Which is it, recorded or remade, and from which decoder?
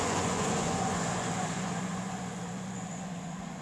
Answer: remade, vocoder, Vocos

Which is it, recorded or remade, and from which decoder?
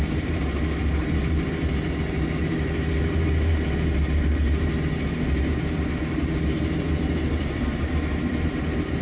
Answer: remade, vocoder, BigVGAN v2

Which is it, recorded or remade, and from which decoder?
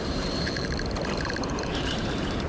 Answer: remade, vocoder, BigVGAN v2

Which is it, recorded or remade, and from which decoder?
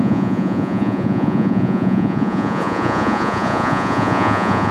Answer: remade, vocoder, Vocos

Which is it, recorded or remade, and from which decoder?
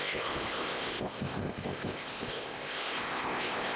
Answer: remade, codec, ZipCodec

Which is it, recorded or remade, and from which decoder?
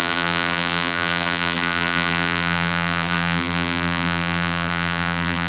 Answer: remade, vocoder, BigVGAN v2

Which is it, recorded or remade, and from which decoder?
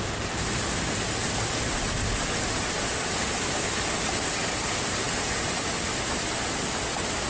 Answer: recorded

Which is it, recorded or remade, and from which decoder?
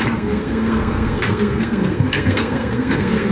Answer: remade, codec, SNAC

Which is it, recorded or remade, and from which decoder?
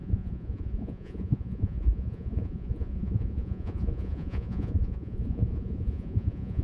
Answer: remade, vocoder, Vocos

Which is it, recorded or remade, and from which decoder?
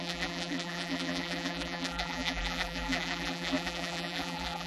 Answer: remade, vocoder, BigVGAN v2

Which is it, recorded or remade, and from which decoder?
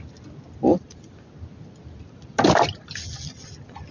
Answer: recorded